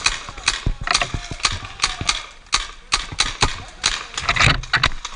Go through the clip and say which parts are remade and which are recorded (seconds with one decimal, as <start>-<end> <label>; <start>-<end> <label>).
0.0-5.2 recorded

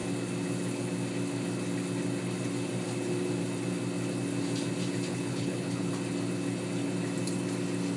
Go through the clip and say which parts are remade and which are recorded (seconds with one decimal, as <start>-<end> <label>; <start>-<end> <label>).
0.0-5.1 recorded; 5.1-5.9 remade; 5.9-8.0 recorded

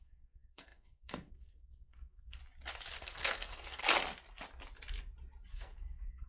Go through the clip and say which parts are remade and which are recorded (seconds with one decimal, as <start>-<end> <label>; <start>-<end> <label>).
0.0-2.4 remade; 2.4-3.0 recorded; 3.0-3.8 remade; 3.8-5.5 recorded; 5.5-6.3 remade

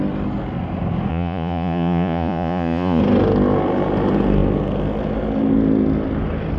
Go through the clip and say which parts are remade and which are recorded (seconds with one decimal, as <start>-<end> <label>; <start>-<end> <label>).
0.0-1.1 recorded; 1.1-3.0 remade; 3.0-6.6 recorded

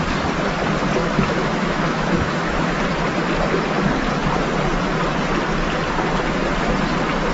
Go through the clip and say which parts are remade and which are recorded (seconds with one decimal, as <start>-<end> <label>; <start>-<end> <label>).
0.0-1.0 recorded; 1.0-2.7 remade; 2.7-7.3 recorded

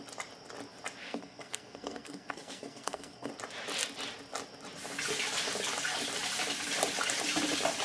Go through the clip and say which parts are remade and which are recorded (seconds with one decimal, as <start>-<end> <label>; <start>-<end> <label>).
0.0-1.0 recorded; 1.0-3.3 remade; 3.3-7.8 recorded

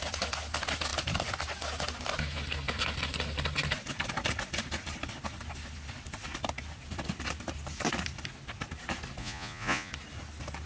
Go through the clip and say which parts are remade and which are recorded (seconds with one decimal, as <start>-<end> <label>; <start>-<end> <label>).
0.0-9.2 recorded; 9.2-9.9 remade; 9.9-10.7 recorded

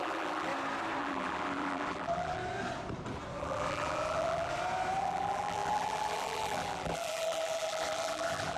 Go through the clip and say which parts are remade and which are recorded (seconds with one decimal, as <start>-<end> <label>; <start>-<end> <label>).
0.0-0.5 remade; 0.5-1.0 recorded; 1.0-2.4 remade; 2.4-3.4 recorded; 3.4-4.5 remade; 4.5-5.0 recorded; 5.0-8.6 remade